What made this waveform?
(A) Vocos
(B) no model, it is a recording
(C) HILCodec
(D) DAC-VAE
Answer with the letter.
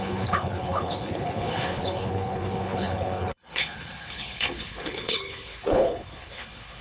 C